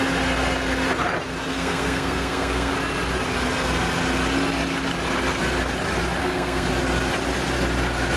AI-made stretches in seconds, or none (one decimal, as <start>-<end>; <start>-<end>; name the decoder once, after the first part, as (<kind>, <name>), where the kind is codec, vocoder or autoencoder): 1.5-2.7 (codec, SNAC); 6.2-6.7